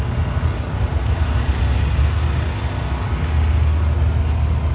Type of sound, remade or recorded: recorded